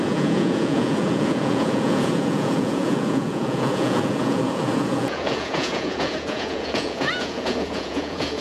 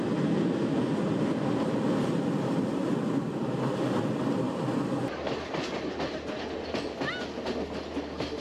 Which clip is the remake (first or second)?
first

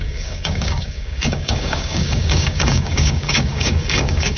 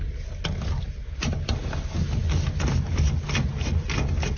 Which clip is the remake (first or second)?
first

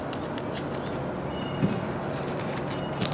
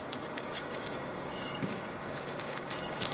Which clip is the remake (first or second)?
second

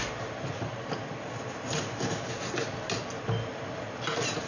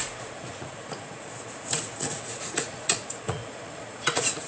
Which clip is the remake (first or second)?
second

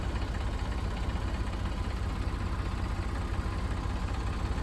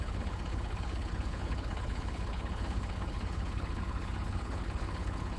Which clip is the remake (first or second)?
second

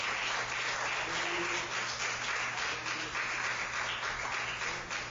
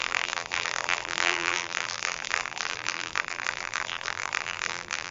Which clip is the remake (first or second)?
second